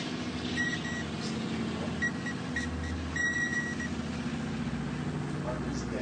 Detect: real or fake real